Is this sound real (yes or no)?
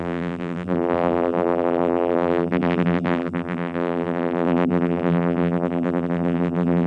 no